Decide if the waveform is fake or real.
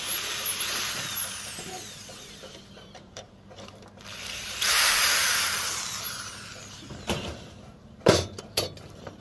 fake